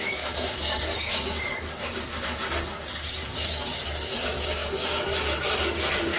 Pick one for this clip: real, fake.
fake